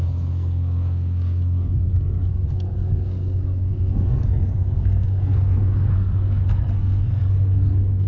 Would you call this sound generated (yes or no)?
yes